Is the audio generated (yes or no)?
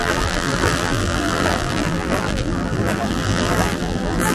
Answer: yes